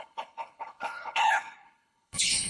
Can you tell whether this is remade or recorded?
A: remade